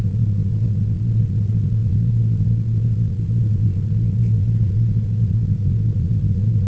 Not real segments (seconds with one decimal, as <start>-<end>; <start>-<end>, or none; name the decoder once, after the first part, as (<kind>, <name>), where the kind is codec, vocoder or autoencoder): 0.0-6.7 (vocoder, Vocos)